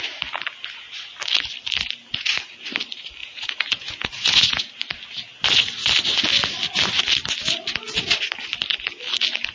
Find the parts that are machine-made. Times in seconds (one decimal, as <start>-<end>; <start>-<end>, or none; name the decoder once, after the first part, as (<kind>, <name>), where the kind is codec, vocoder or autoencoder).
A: 3.2-4.7 (vocoder, Vocos)